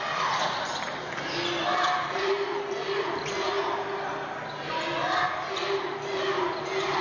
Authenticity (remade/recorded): recorded